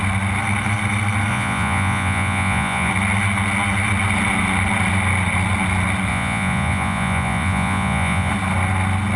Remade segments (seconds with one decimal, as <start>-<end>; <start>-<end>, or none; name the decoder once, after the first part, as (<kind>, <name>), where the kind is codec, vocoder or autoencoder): 1.3-2.9 (vocoder, Vocos); 6.1-8.3